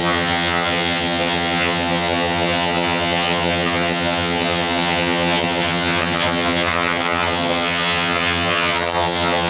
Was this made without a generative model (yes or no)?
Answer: no